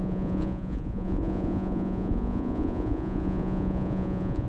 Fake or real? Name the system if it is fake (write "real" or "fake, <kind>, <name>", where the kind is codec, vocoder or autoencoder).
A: fake, vocoder, Vocos